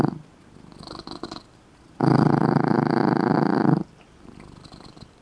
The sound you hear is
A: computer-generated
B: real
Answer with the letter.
B